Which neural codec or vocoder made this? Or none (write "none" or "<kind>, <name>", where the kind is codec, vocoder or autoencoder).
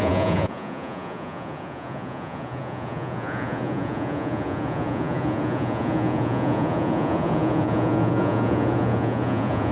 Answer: vocoder, Vocos